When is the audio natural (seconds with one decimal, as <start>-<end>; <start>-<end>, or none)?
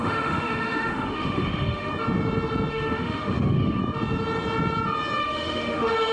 1.9-2.7; 3.8-5.2